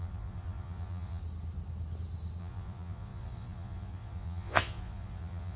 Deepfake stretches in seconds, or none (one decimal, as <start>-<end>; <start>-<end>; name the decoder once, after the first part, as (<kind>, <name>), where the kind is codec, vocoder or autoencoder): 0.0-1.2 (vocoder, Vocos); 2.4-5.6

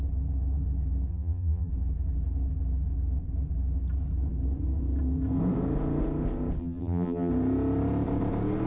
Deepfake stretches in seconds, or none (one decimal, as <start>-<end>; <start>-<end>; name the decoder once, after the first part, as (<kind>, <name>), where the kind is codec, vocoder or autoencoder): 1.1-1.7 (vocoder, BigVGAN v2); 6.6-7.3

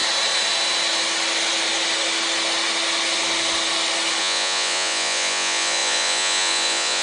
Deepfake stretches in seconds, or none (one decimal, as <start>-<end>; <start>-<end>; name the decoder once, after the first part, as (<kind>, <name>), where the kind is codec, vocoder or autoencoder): 4.2-7.0 (vocoder, Vocos)